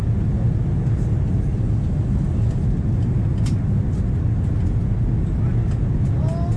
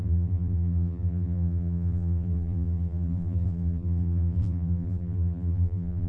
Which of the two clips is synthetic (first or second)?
second